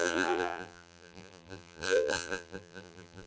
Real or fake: fake